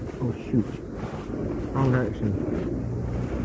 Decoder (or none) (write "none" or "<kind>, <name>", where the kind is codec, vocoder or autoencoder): none